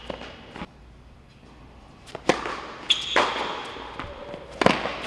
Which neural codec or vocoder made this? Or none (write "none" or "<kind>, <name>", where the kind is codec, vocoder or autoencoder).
none